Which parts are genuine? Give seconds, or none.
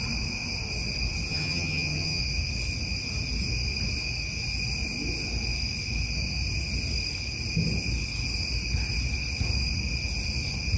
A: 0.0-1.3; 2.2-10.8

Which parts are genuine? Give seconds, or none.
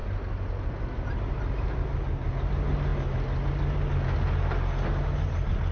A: 0.0-5.7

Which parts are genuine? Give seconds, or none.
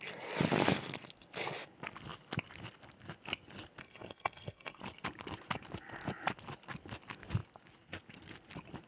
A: 0.0-3.8; 4.8-8.9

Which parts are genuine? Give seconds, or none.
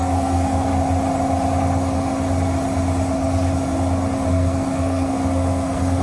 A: 0.7-4.3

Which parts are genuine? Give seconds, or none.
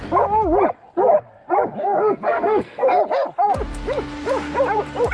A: 0.0-1.8; 3.0-5.1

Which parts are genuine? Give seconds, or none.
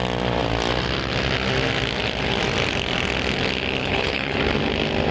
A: 0.0-3.8; 4.4-5.1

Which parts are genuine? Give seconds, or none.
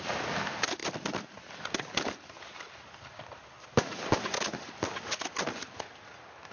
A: 0.0-6.5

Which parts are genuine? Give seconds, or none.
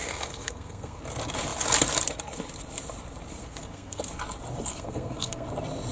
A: 1.0-3.4; 4.0-4.7; 5.5-5.9